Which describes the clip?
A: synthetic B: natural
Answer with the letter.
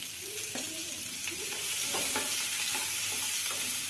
A